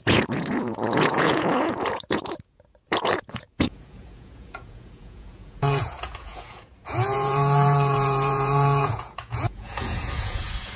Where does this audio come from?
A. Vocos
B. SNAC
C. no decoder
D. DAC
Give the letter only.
A